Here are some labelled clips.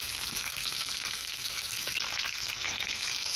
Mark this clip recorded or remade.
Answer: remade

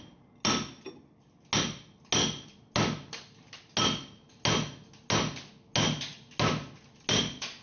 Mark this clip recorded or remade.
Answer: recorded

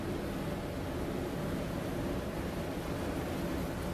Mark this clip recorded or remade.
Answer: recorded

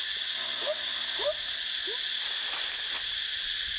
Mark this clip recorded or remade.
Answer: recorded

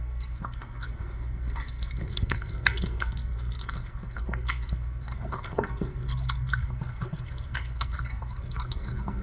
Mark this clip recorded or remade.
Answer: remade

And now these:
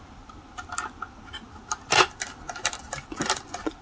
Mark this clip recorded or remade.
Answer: recorded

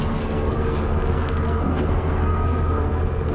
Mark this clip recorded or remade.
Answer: remade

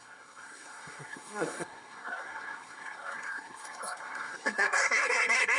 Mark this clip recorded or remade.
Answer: remade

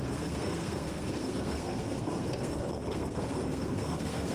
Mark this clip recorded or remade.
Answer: remade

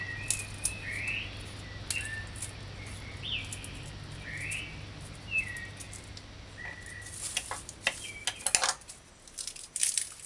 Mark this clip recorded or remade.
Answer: recorded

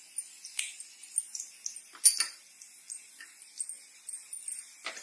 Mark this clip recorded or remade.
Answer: recorded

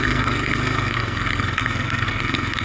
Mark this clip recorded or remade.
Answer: remade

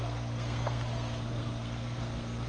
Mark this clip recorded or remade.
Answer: remade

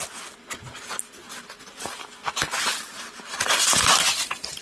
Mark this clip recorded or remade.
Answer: recorded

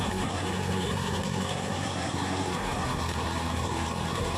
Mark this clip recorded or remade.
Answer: remade